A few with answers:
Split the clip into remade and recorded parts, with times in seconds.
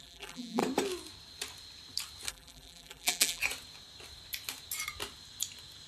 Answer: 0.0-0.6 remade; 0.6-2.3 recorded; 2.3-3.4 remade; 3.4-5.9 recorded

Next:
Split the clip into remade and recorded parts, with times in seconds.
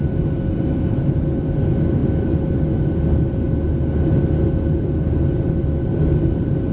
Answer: 0.0-6.7 recorded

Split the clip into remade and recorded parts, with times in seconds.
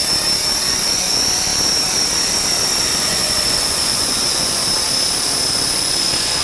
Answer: 0.0-0.6 recorded; 0.6-1.5 remade; 1.5-2.8 recorded; 2.8-4.6 remade; 4.6-5.5 recorded; 5.5-6.4 remade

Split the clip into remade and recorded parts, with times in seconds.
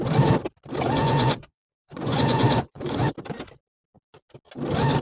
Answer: 0.0-1.0 recorded; 1.0-3.1 remade; 3.1-5.0 recorded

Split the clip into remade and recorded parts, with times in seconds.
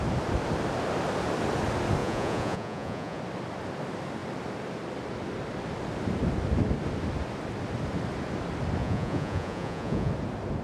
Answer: 0.0-2.0 recorded; 2.0-3.2 remade; 3.2-8.8 recorded; 8.8-10.1 remade; 10.1-10.6 recorded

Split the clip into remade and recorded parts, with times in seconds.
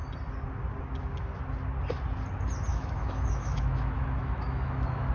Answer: 0.0-2.7 recorded; 2.7-5.1 remade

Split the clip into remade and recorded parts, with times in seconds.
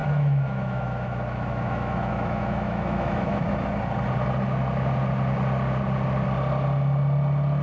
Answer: 0.0-3.5 remade; 3.5-7.6 recorded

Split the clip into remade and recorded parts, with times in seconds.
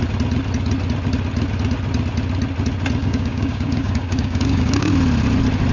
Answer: 0.0-3.0 recorded; 3.0-4.9 remade; 4.9-5.7 recorded